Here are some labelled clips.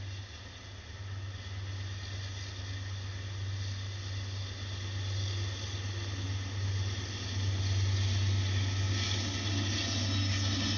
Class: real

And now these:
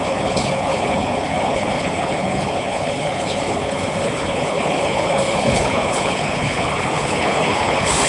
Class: fake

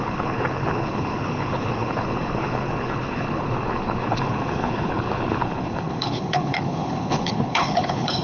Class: fake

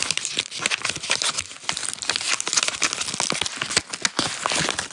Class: real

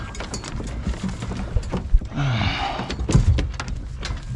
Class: real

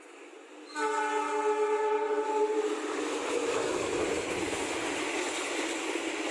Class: real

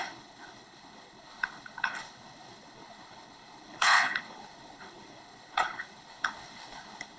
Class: fake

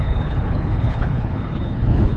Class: fake